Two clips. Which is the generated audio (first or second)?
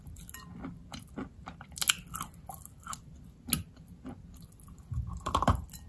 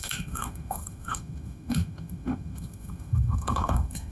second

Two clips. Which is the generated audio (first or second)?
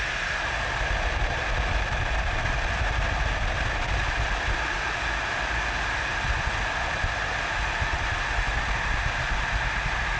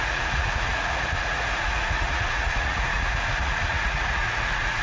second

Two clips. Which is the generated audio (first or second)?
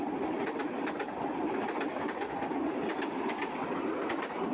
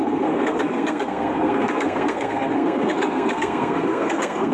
second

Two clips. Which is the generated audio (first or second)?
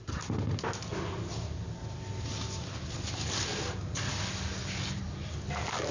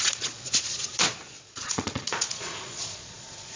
second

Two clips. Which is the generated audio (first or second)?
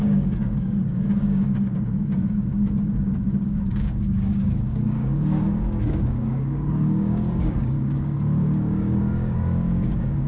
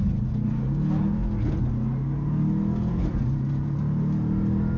first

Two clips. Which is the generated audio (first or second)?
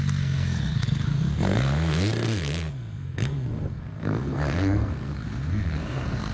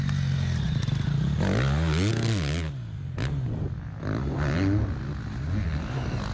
first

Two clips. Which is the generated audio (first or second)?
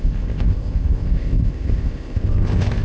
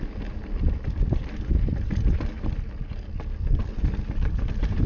first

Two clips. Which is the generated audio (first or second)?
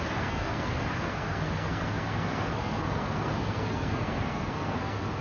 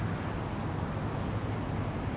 first